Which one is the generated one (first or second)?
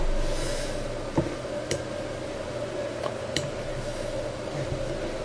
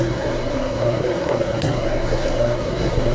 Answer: second